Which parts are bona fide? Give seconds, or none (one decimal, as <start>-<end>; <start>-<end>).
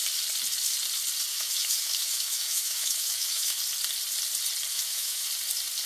0.0-1.3; 3.6-4.7; 5.3-5.9